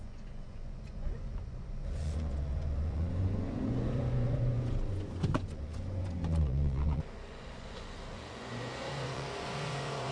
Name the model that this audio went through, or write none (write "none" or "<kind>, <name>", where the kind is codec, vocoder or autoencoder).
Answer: vocoder, Vocos